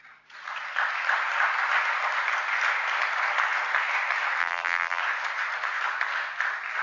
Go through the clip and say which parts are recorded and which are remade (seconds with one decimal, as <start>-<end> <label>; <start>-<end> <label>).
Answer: 0.0-4.4 recorded; 4.4-5.0 remade; 5.0-6.8 recorded